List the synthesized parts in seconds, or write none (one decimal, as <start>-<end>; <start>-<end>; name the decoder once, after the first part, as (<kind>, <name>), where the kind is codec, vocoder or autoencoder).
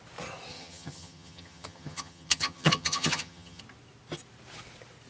0.5-3.6 (vocoder, HiFi-GAN)